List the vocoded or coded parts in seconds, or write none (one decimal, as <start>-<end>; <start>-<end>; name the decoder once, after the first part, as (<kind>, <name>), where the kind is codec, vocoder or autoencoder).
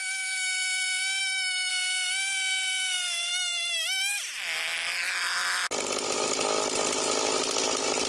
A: 1.2-1.7 (autoencoder, DAC-VAE); 3.3-4.1